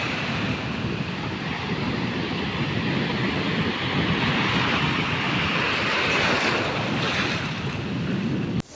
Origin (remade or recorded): recorded